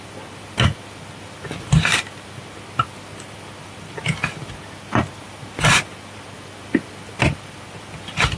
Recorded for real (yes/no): yes